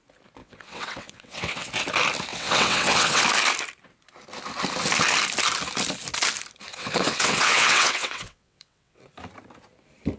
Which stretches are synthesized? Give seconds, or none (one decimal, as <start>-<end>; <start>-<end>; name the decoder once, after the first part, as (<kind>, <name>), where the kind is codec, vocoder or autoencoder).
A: 0.4-1.7 (vocoder, WaveNeXt); 2.3-3.2; 6.7-9.0